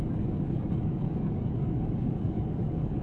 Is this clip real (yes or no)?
no